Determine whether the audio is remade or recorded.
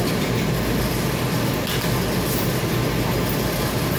recorded